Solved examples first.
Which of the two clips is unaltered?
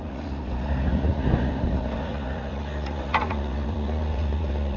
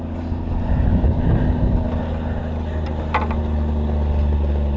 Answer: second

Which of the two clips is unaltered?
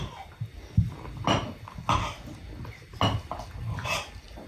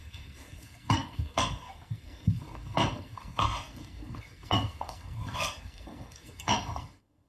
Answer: first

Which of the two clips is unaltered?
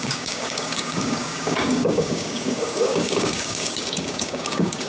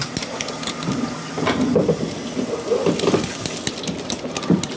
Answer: second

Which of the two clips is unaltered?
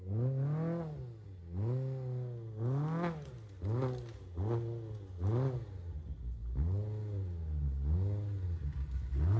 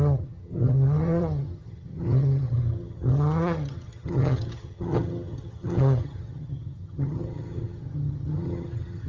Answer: first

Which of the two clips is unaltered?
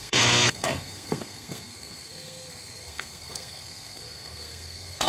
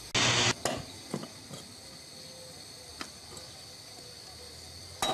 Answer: second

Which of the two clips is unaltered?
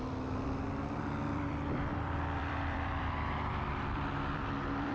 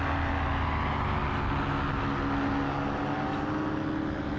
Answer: second